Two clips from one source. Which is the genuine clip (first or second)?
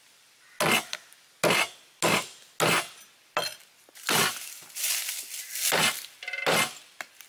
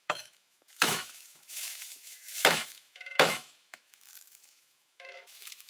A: first